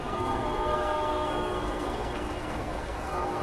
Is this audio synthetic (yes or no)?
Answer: yes